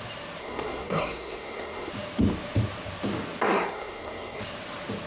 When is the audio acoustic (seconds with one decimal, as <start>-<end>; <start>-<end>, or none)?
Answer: 0.0-0.4; 1.9-3.5; 4.4-5.1